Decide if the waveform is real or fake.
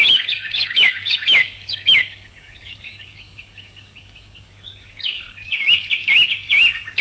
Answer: fake